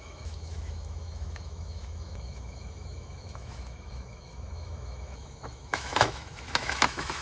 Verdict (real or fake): fake